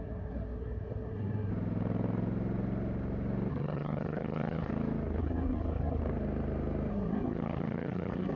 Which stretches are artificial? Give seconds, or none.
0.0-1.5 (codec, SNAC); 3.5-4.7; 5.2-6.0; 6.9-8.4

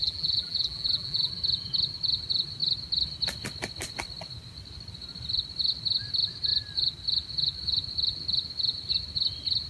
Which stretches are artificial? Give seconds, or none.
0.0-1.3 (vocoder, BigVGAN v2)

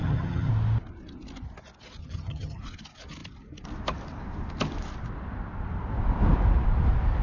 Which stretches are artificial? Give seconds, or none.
0.0-0.5 (vocoder, HiFi-GAN); 2.0-2.6